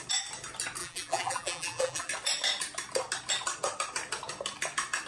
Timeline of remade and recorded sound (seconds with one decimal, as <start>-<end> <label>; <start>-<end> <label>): 0.0-0.8 recorded; 0.8-2.1 remade; 2.1-5.1 recorded